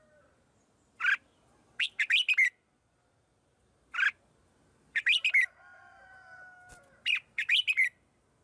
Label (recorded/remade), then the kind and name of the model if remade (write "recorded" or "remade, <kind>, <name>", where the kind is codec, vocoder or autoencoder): recorded